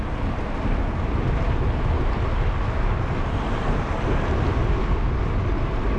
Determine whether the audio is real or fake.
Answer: real